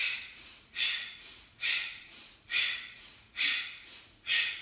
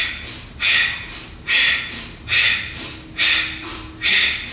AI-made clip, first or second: first